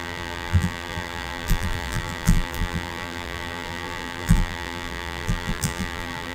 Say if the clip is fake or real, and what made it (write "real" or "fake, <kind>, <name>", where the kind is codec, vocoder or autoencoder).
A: fake, vocoder, BigVGAN v2